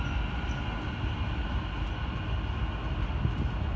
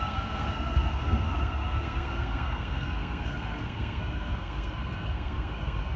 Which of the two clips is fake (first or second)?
second